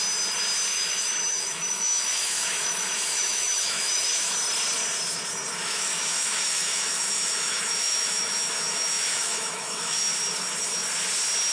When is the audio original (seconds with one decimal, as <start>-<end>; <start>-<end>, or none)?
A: 0.0-0.7; 4.3-5.6; 10.1-11.5